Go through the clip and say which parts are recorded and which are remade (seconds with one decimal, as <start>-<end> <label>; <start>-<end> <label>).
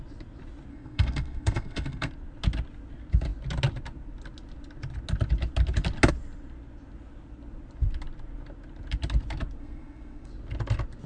0.0-0.7 recorded; 0.7-2.1 remade; 2.1-9.6 recorded; 9.6-10.3 remade; 10.3-11.1 recorded